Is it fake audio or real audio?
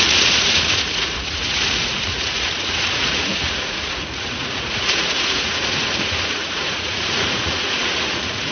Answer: fake